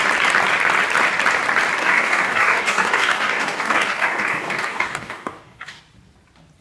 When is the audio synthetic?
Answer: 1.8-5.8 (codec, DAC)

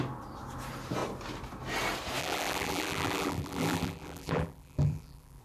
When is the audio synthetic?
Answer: 2.2-5.4 (vocoder, BigVGAN v2)

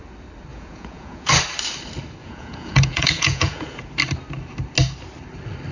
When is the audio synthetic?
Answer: 0.5-1.3 (vocoder, Vocos); 2.2-3.9

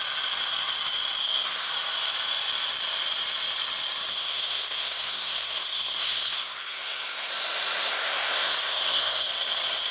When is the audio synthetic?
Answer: 1.2-1.7 (codec, SNAC); 4.1-7.3; 7.9-9.3

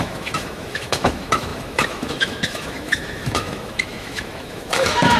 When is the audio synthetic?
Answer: 0.0-5.2 (autoencoder, DAC-VAE)

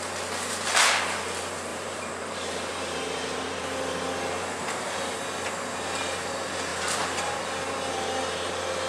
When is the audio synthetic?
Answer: 1.7-3.9 (vocoder, BigVGAN v2); 4.6-5.2; 6.7-7.4

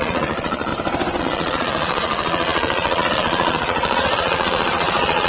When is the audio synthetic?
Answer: 0.0-0.7 (vocoder, Vocos); 1.2-5.3

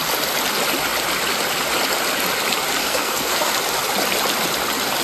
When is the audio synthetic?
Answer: 2.8-3.5 (codec, SNAC)